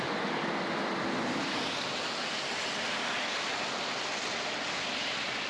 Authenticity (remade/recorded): recorded